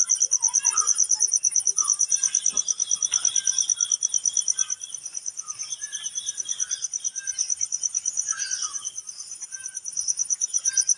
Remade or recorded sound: recorded